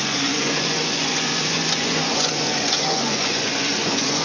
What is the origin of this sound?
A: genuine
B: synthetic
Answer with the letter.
B